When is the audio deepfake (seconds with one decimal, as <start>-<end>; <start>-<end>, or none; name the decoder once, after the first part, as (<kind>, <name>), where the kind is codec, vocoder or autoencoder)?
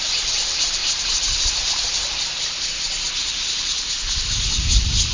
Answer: none